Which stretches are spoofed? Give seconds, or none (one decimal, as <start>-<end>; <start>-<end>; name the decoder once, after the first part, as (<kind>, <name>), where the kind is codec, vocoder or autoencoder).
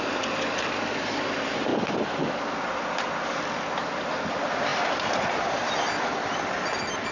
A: none